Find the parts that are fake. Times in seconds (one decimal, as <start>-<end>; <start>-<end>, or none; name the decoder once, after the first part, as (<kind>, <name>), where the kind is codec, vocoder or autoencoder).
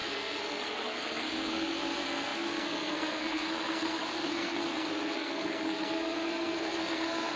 0.0-7.4 (codec, SNAC)